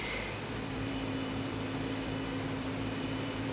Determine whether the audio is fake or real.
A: fake